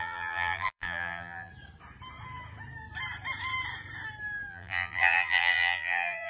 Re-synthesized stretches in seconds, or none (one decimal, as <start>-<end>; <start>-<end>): 0.0-1.5; 4.5-6.3